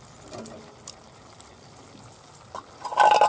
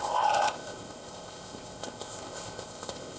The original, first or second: first